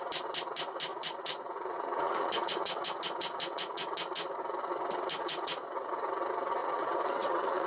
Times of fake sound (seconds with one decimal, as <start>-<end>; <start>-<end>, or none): 0.9-4.7; 5.2-5.9; 6.6-7.7

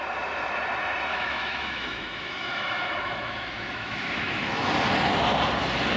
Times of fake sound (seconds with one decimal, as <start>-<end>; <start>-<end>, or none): 1.1-4.7